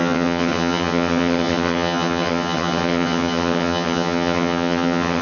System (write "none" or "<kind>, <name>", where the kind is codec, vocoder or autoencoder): vocoder, HiFi-GAN